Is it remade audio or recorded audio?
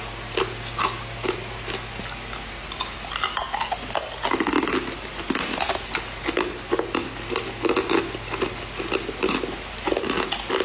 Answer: recorded